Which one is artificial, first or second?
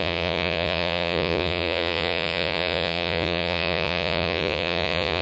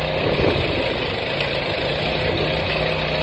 first